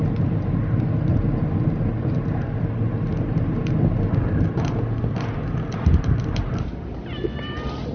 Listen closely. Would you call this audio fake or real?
real